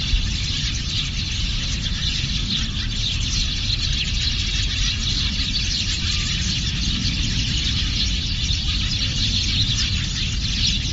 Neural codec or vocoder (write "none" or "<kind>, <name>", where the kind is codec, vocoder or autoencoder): none